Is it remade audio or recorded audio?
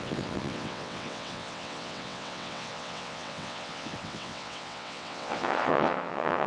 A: remade